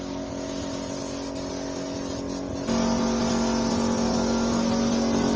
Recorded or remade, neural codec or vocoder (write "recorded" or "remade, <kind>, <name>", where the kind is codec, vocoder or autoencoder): recorded